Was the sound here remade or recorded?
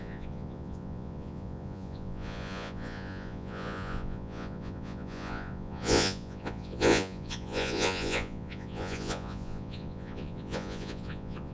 remade